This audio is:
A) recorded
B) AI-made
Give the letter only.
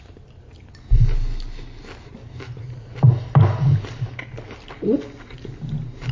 A